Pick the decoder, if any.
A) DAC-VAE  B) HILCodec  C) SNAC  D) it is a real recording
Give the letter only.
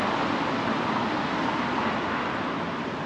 D